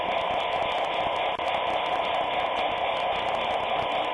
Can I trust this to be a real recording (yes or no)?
yes